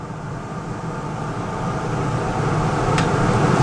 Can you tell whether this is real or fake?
fake